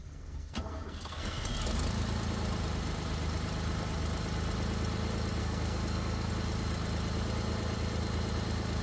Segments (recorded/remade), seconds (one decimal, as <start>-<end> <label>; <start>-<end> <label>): 0.0-1.6 remade; 1.6-5.4 recorded; 5.4-6.3 remade; 6.3-8.8 recorded